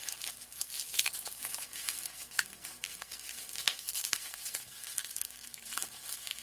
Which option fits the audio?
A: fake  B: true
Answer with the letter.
A